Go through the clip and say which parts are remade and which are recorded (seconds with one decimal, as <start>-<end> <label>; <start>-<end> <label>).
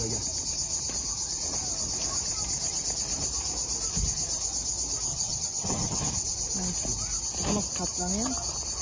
0.0-5.1 recorded; 5.1-6.1 remade; 6.1-8.8 recorded